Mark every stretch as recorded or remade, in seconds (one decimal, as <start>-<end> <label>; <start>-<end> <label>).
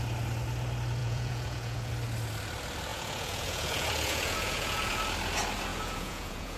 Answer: 0.0-1.0 recorded; 1.0-1.9 remade; 1.9-2.9 recorded; 2.9-4.9 remade; 4.9-5.7 recorded; 5.7-6.6 remade